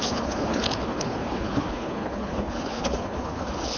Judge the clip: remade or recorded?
remade